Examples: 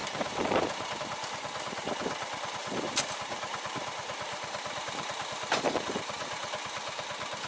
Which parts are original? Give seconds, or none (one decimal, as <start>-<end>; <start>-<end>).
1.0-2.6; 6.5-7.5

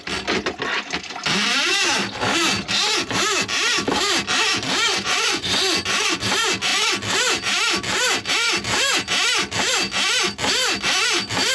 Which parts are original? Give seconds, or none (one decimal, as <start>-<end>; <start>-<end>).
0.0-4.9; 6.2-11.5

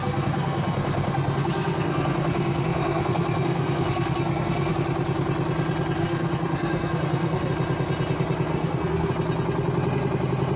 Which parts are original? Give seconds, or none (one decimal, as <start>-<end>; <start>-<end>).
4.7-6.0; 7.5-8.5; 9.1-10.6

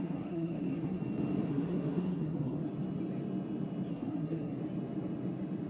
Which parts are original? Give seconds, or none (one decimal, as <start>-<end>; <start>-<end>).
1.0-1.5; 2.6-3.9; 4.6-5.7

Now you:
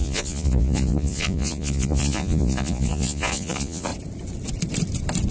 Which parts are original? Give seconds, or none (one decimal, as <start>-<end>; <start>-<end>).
3.9-5.3

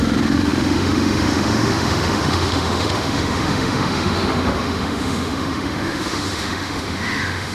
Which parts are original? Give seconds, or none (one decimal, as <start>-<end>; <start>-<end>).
none

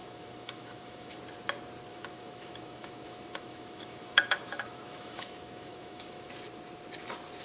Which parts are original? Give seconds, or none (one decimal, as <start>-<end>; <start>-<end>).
1.2-1.9; 6.3-7.4

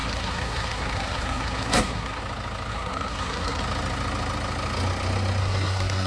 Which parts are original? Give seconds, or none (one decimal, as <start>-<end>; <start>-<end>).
2.2-2.7; 3.6-5.4